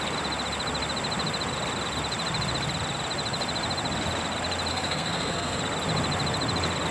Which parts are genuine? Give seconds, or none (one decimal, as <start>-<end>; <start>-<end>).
0.0-4.7; 5.6-6.9

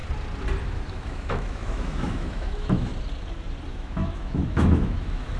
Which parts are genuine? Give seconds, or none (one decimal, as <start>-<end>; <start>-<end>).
0.0-0.6; 2.9-3.7

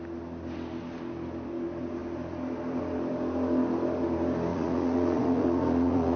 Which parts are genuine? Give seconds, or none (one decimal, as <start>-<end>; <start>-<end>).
0.0-4.5

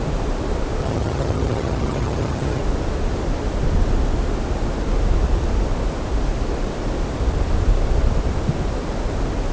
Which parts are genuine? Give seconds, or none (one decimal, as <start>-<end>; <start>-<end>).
0.0-0.8; 2.6-9.5